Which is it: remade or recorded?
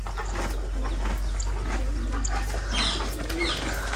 recorded